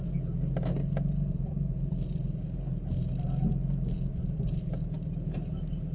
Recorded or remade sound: recorded